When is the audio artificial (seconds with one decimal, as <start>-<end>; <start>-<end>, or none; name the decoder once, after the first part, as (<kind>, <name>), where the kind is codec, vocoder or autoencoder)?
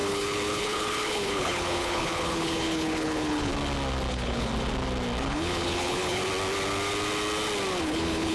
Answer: 0.0-3.5 (codec, HILCodec); 4.1-4.5; 5.2-6.2; 7.8-8.3